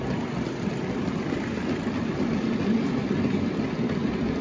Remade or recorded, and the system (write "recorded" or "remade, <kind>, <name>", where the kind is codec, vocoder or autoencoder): recorded